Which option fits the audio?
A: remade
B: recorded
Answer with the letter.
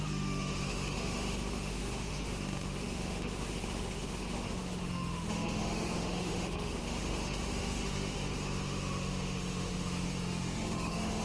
A